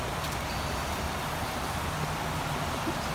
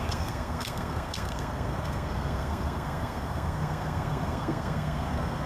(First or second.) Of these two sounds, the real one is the first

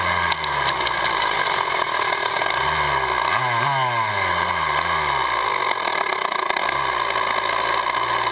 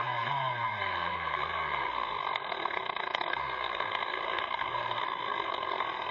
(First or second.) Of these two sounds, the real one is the first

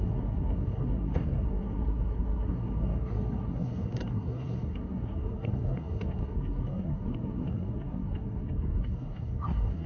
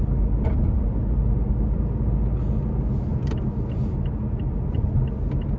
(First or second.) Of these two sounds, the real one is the second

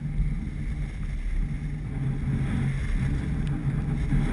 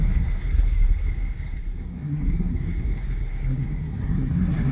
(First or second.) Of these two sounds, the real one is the first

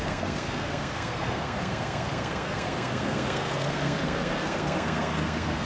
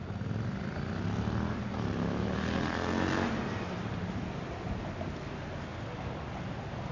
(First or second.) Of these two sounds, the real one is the second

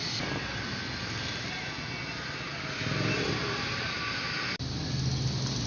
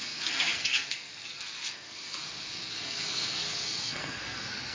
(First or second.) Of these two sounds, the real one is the first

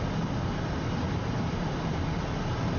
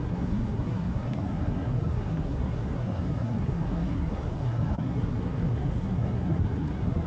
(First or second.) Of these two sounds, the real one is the first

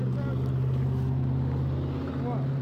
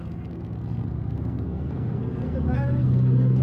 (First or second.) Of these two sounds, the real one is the first